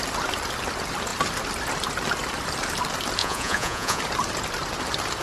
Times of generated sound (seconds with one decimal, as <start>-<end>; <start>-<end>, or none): 3.2-4.0